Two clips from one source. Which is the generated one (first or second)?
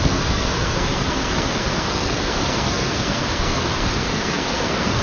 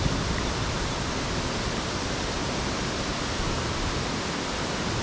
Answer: first